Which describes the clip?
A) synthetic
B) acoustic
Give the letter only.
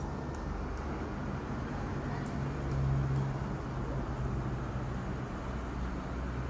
B